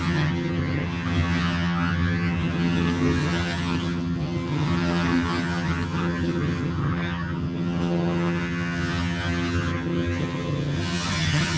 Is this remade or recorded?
remade